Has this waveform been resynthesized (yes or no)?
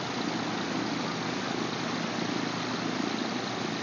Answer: no